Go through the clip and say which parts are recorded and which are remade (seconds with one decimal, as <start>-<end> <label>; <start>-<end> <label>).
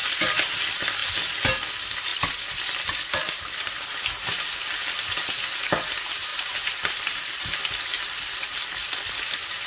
0.0-0.6 remade; 0.6-6.3 recorded; 6.3-7.6 remade; 7.6-9.7 recorded